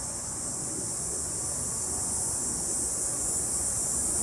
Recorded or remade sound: remade